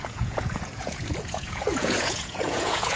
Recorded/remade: remade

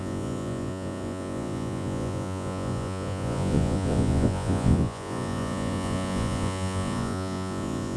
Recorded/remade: remade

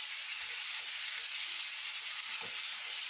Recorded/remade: recorded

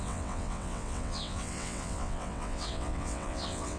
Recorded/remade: remade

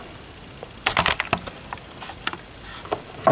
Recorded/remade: recorded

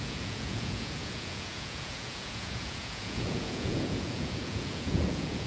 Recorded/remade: remade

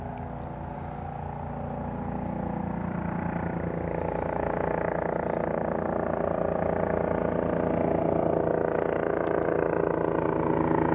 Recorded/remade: recorded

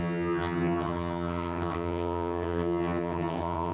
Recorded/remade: remade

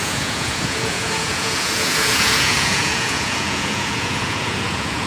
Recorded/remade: remade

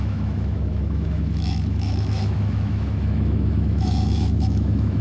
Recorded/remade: remade